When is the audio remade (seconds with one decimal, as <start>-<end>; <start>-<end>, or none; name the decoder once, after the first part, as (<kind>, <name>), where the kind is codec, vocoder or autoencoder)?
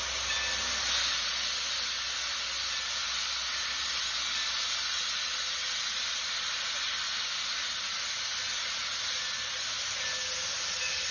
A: none